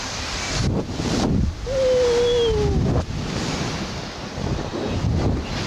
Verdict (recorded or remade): recorded